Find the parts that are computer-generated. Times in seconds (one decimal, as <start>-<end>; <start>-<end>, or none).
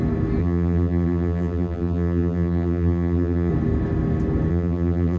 0.4-3.5; 4.5-5.2